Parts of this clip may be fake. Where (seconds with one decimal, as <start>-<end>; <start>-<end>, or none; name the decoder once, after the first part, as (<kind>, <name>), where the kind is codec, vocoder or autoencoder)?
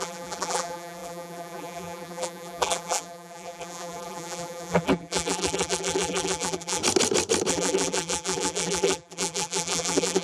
0.0-6.8 (vocoder, BigVGAN v2); 7.5-10.2